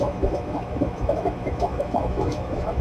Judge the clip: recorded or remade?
remade